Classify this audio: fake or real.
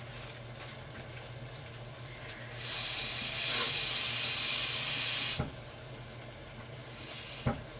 real